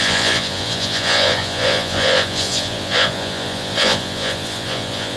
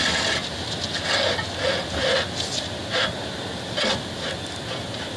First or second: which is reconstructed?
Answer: first